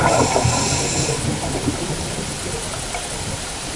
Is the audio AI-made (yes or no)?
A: no